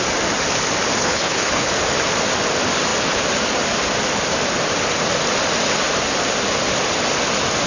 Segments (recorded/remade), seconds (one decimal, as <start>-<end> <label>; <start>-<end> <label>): 0.0-1.0 recorded; 1.0-1.7 remade; 1.7-7.7 recorded